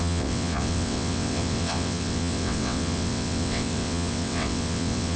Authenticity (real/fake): fake